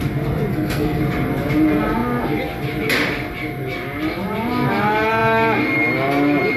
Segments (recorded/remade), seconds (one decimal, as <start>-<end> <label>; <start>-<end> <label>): 0.0-0.5 recorded; 0.5-1.0 remade; 1.0-6.6 recorded